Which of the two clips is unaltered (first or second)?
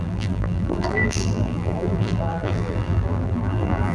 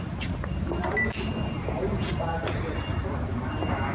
second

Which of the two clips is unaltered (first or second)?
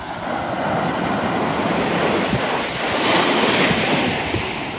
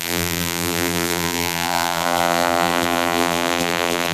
first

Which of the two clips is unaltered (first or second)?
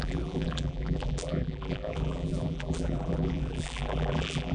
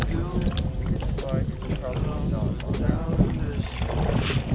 second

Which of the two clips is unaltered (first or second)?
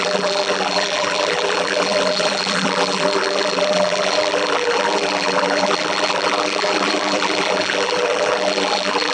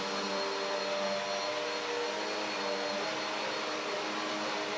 second